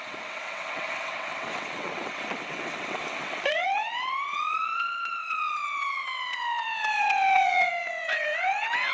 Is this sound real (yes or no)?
no